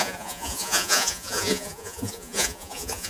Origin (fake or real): fake